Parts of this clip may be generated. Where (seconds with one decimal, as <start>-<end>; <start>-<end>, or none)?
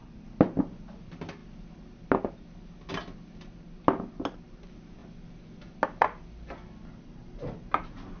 none